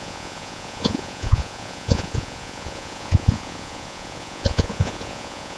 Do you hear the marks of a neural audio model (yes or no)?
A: yes